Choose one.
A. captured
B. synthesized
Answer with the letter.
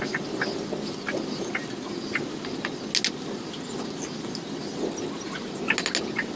A